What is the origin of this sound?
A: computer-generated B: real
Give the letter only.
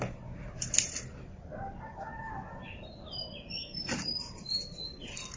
B